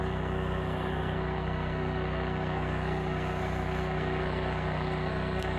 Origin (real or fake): fake